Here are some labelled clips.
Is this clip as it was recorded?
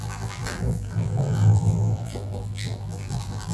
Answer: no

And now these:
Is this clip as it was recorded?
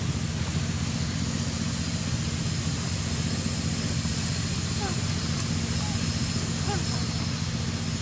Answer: yes